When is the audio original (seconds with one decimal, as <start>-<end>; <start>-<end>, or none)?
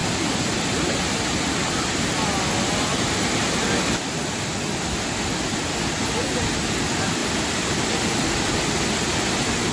0.0-9.7